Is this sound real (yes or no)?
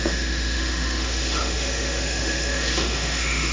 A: no